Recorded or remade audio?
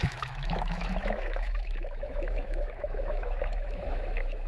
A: remade